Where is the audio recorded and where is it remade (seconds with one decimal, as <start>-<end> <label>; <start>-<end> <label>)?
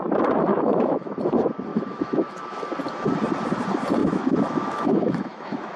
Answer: 0.0-0.5 recorded; 0.5-1.2 remade; 1.2-1.7 recorded; 1.7-2.6 remade; 2.6-4.0 recorded; 4.0-5.8 remade